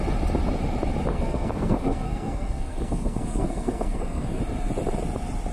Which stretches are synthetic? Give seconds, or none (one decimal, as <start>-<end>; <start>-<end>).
1.1-4.4